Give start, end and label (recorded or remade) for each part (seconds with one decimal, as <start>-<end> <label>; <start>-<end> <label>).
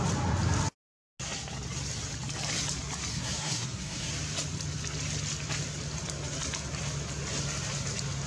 0.0-3.1 recorded; 3.1-4.1 remade; 4.1-8.3 recorded